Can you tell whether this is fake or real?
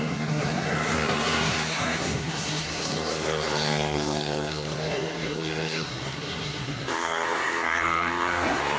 fake